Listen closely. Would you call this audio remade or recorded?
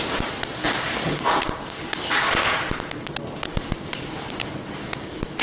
recorded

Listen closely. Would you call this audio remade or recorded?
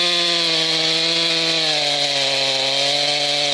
recorded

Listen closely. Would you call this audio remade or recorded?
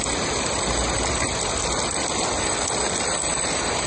recorded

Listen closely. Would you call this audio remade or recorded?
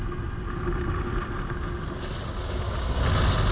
recorded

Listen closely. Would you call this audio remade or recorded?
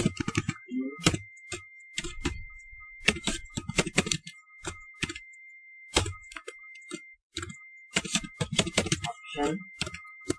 remade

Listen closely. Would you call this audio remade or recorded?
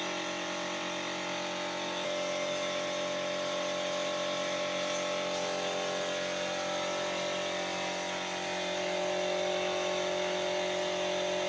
recorded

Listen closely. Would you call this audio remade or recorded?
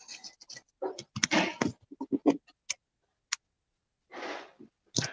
recorded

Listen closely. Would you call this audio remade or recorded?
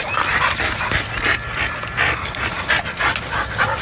recorded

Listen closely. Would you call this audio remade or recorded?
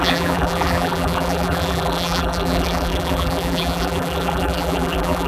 remade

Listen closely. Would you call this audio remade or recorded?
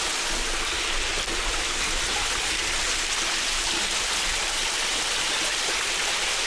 remade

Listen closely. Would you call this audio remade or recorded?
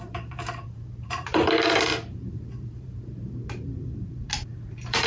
remade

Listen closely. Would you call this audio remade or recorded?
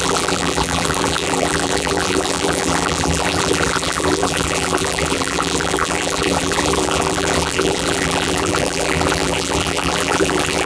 remade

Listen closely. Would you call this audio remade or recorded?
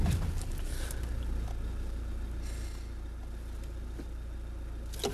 recorded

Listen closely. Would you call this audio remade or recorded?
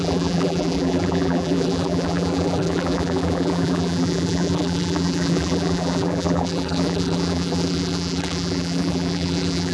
remade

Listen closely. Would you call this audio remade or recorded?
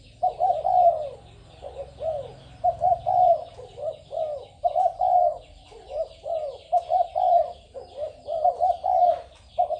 recorded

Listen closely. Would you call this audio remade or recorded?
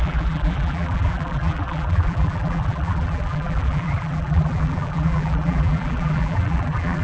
remade